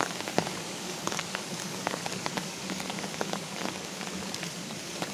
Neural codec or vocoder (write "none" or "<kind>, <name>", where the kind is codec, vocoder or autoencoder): codec, DAC